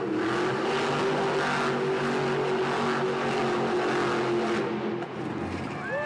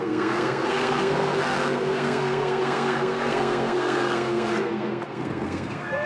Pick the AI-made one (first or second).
second